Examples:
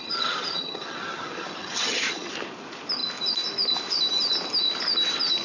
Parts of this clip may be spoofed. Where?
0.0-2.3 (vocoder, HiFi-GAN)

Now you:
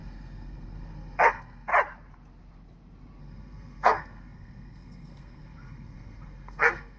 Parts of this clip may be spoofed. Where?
0.0-1.7 (codec, SNAC); 3.2-7.0

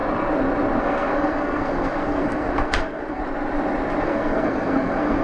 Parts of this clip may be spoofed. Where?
0.8-3.2 (codec, SNAC); 4.0-5.2

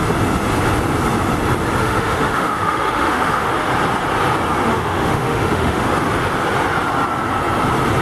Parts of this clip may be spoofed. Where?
1.8-3.5 (autoencoder, DAC-VAE); 4.7-5.9